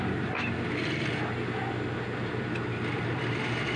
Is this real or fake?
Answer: real